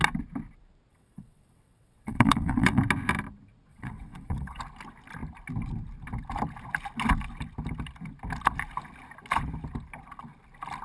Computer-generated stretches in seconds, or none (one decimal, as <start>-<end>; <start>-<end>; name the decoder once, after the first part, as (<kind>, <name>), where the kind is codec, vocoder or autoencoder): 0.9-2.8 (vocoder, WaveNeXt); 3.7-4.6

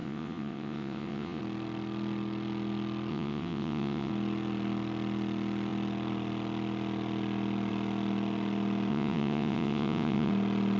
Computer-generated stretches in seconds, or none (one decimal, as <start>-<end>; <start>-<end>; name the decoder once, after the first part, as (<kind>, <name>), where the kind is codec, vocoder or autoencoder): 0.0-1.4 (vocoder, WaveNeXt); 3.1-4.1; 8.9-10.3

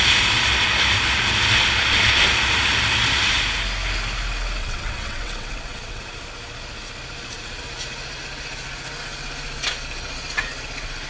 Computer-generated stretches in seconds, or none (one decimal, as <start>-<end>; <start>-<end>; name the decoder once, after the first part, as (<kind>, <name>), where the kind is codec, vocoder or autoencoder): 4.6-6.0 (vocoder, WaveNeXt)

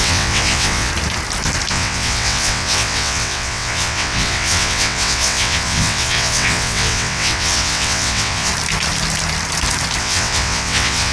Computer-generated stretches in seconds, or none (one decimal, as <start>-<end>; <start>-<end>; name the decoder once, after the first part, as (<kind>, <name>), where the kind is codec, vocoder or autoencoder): 0.0-0.9 (vocoder, WaveNeXt); 1.7-8.5; 10.0-11.1

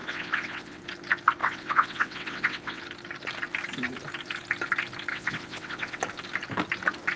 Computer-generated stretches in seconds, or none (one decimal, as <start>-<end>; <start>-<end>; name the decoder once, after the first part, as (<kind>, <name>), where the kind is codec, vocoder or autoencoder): 0.0-0.8 (vocoder, WaveNeXt); 1.4-2.8; 5.1-6.0

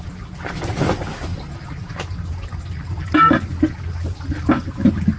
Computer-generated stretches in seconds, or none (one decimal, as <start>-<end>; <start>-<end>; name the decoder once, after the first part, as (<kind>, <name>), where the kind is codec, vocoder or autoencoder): none

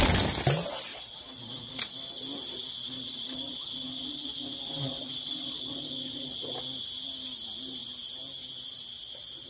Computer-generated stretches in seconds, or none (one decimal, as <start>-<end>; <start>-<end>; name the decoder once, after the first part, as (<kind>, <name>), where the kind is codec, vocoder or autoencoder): 0.9-1.8 (vocoder, WaveNeXt); 2.8-6.6